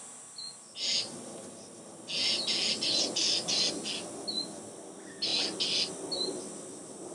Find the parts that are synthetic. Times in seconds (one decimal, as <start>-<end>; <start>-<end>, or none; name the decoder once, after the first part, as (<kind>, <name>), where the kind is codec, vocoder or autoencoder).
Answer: none